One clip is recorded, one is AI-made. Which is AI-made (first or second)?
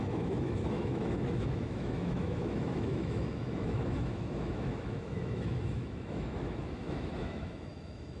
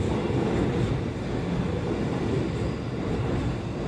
first